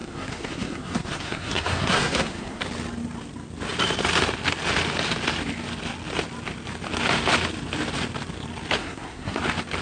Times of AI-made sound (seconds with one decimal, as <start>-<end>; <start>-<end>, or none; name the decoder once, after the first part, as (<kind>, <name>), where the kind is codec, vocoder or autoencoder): 0.0-2.6 (codec, SNAC); 8.8-9.4